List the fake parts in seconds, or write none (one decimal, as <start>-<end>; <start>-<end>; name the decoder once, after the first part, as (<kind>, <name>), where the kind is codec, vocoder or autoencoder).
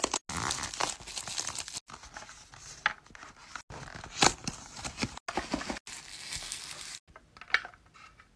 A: 6.1-6.6 (codec, SNAC)